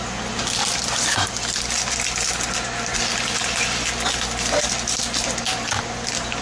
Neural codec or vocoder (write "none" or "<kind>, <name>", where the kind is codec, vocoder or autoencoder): none